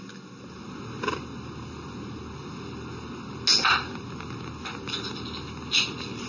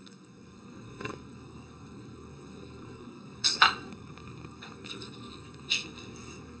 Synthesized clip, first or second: second